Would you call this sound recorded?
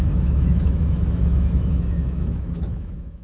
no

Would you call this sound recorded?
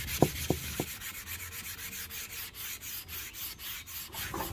yes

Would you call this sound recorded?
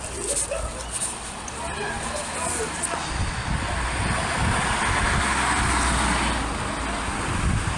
yes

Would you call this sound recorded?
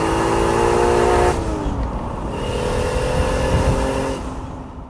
yes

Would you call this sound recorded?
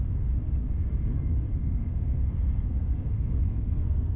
no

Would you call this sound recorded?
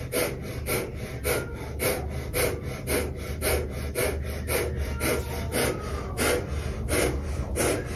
yes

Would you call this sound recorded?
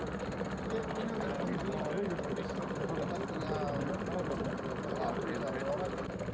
yes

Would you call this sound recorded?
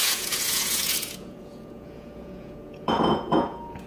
no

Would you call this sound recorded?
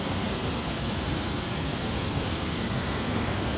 no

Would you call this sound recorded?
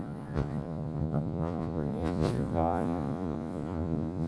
no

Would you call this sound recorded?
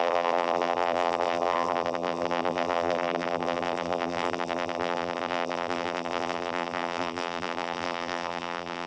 no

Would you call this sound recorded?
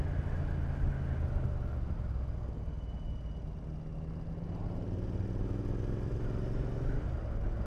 yes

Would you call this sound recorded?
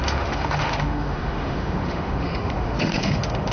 no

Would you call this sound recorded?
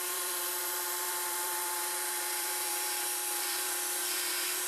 no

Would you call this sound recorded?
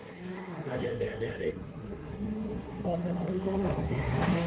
no